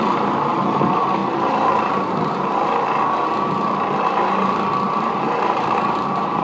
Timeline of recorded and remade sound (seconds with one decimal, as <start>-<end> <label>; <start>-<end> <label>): 0.0-2.6 remade; 2.6-4.8 recorded; 4.8-6.4 remade